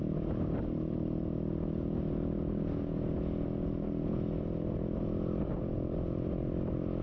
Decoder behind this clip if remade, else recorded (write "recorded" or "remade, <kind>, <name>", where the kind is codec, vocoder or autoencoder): recorded